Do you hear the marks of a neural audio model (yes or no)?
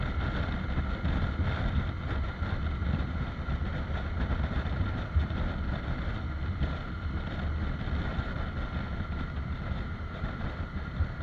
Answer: no